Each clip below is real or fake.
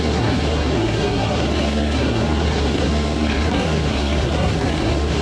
fake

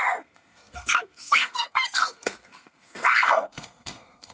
fake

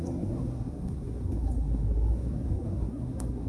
fake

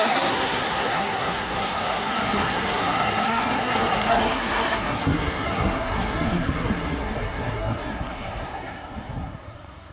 fake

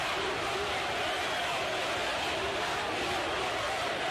real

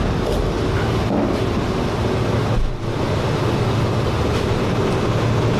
real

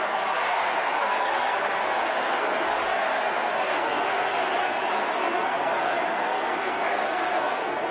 fake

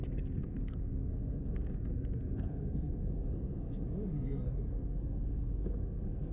fake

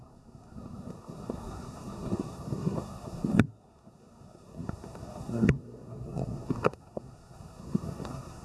fake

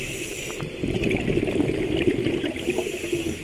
real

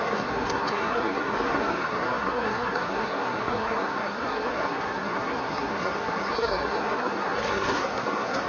fake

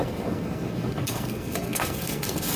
fake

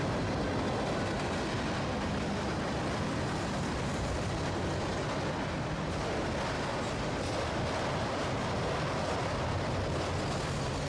real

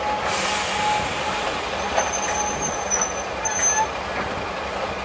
real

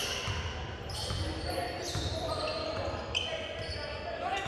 real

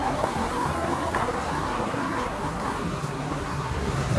fake